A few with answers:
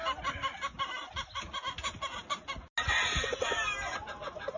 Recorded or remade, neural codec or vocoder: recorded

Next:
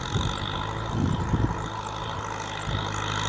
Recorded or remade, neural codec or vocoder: recorded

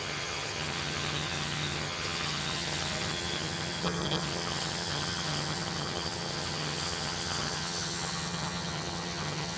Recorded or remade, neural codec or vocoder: remade, vocoder, HiFi-GAN